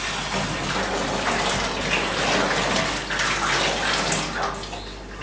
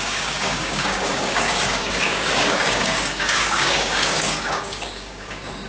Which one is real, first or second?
first